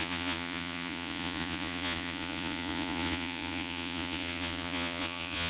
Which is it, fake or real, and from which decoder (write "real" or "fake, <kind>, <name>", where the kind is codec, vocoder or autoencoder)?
fake, vocoder, Vocos